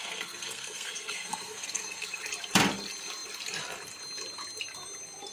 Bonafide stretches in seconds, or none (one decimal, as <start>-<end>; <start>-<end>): 2.2-5.3